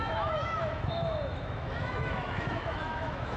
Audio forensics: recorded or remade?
remade